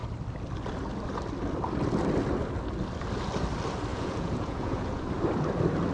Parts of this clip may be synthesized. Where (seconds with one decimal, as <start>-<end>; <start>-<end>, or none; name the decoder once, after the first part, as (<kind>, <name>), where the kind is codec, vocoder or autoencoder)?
3.9-5.0 (vocoder, Vocos)